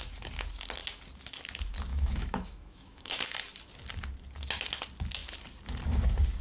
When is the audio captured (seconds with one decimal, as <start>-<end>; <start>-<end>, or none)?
0.0-1.9; 3.2-6.4